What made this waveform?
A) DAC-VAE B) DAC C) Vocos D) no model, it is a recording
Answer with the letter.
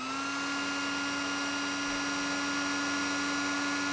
D